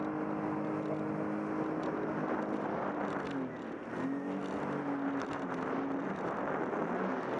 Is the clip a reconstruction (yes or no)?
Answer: no